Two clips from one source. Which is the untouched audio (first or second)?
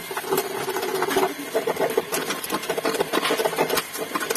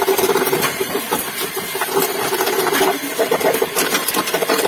first